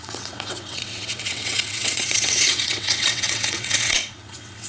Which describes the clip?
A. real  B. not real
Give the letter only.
B